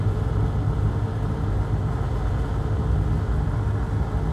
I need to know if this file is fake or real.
real